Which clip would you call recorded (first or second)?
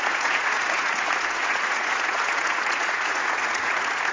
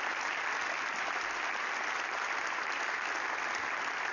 second